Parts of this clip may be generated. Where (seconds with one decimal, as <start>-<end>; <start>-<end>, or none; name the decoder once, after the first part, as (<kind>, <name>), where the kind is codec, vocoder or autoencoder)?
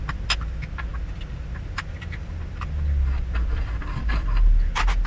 none